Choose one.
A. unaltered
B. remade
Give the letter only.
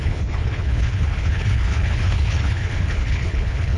B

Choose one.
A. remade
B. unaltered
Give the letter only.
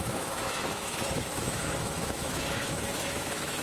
A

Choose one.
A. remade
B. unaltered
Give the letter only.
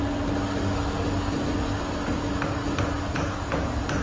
B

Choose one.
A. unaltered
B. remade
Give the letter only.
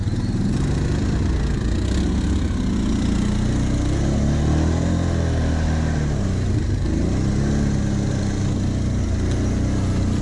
A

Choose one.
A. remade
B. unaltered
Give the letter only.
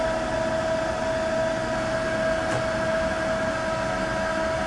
B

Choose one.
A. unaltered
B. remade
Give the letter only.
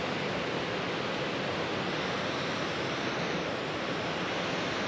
A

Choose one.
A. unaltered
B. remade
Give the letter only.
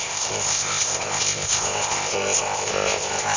B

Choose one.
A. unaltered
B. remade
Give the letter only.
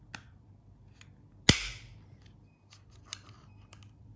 A